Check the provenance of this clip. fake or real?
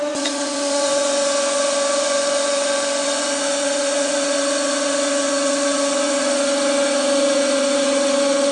fake